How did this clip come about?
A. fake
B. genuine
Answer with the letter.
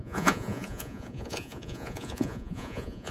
A